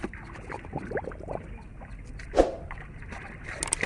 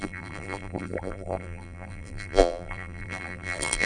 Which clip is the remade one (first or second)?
second